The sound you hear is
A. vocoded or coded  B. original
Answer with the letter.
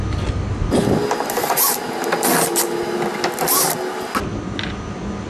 B